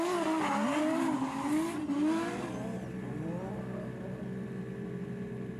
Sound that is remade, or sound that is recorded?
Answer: recorded